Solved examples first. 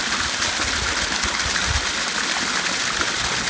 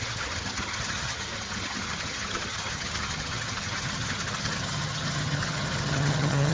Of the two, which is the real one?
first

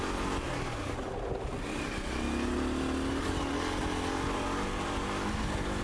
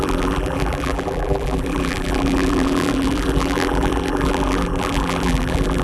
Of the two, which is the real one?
first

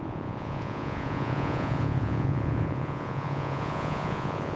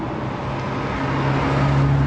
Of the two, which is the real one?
second